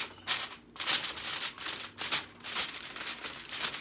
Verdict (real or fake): real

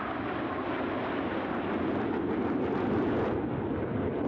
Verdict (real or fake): real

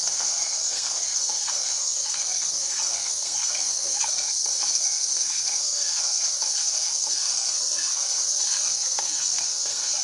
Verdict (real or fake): fake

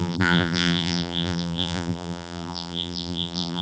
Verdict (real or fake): fake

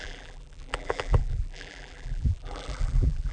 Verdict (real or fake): fake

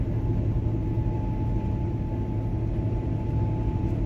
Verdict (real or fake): real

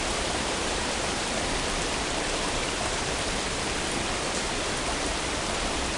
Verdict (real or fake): real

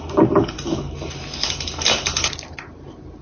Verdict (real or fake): real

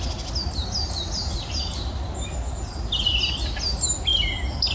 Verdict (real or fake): real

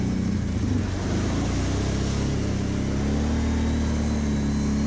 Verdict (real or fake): real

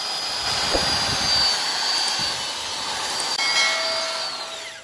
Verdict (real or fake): real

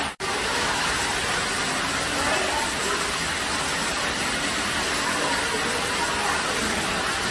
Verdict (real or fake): real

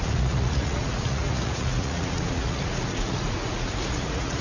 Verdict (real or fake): fake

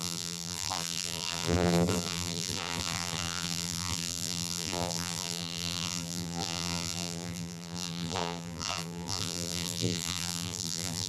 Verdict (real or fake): fake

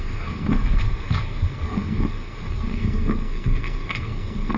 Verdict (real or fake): fake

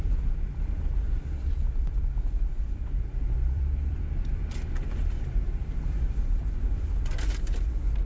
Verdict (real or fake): fake